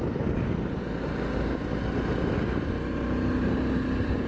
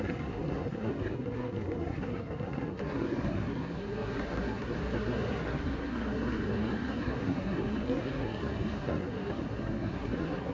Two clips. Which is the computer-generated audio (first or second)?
second